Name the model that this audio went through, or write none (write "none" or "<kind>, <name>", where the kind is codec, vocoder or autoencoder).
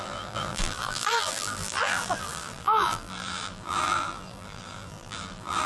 vocoder, BigVGAN v2